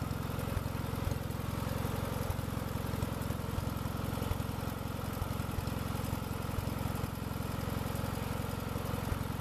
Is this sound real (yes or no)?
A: yes